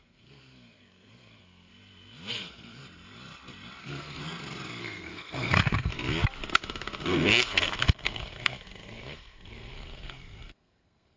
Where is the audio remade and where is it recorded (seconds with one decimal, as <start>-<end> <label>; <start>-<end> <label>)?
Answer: 0.0-1.7 remade; 1.7-2.3 recorded; 2.3-2.8 remade; 2.8-3.8 recorded; 3.8-4.2 remade; 4.2-4.8 recorded; 4.8-5.9 remade; 5.9-6.5 recorded; 6.5-11.2 remade